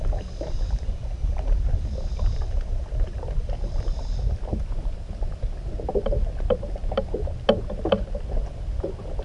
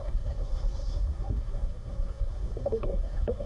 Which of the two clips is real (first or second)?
first